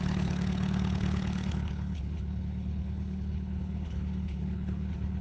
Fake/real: fake